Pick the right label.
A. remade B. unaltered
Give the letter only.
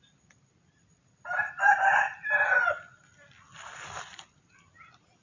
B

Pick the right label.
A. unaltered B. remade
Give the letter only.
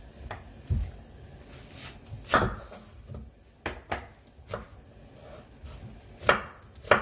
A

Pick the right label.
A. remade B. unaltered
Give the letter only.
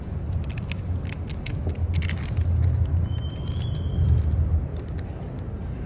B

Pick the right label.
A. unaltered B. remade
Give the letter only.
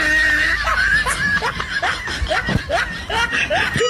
A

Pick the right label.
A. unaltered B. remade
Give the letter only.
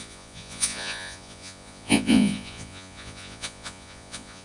B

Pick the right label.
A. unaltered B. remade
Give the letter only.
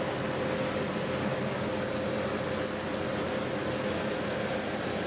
A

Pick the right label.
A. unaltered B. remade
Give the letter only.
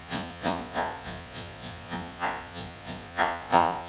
B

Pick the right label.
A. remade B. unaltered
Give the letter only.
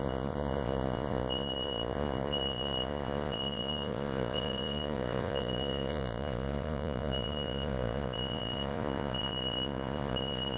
A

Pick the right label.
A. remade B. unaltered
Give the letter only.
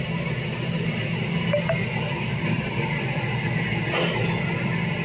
B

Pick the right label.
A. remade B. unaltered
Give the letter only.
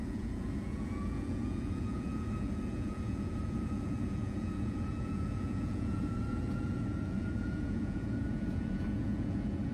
A